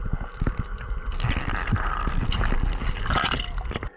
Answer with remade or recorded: recorded